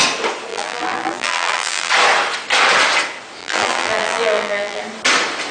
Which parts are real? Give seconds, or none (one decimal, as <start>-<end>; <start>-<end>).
0.0-0.5; 1.9-3.4; 4.8-5.5